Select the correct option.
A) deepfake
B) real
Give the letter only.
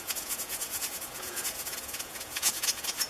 A